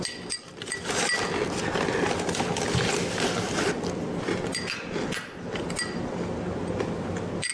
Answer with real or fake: real